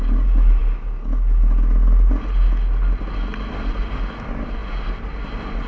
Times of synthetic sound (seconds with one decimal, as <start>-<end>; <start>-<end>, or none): none

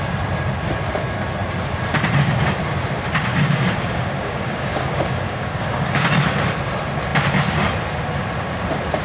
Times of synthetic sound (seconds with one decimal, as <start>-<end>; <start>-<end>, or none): 3.3-6.1

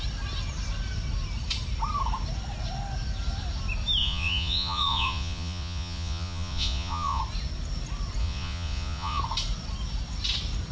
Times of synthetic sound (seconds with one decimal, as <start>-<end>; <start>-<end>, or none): 4.0-7.2; 8.2-9.2